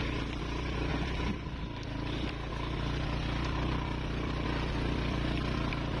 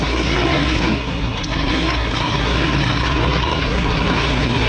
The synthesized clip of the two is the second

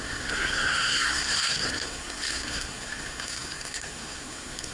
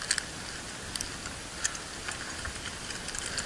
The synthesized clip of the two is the first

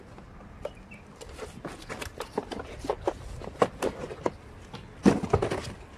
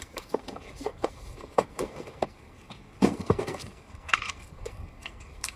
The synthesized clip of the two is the second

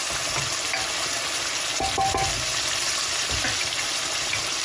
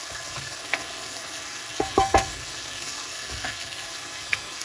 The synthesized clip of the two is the second